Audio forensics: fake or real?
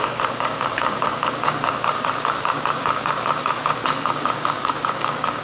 fake